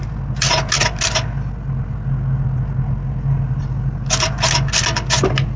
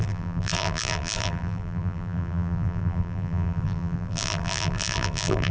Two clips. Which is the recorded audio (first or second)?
first